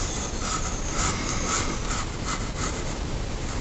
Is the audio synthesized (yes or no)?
yes